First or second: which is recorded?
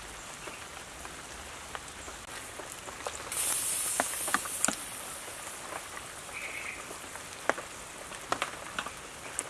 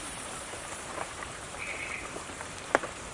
first